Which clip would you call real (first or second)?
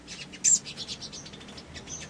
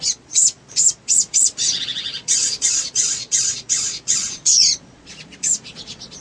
first